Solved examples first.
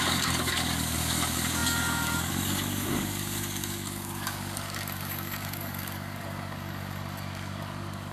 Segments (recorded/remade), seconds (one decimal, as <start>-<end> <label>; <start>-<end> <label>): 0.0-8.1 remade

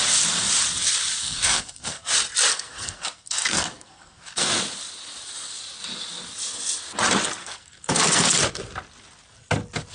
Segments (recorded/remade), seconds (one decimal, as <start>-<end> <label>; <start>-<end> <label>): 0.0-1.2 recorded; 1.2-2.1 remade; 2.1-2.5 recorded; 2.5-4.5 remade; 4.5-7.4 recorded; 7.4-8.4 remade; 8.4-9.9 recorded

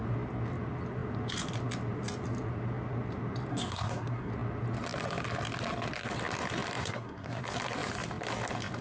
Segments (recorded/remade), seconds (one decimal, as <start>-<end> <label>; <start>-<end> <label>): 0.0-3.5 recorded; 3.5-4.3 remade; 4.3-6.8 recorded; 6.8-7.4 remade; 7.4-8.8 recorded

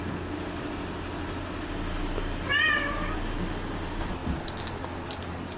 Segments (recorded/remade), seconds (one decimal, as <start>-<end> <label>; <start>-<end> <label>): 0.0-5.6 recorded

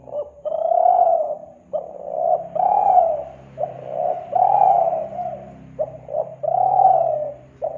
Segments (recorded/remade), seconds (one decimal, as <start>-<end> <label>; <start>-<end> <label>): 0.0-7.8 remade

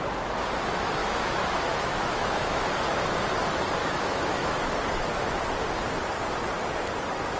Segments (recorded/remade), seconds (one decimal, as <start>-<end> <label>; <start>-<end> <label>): 0.0-1.0 recorded; 1.0-2.7 remade; 2.7-3.8 recorded; 3.8-4.7 remade; 4.7-7.4 recorded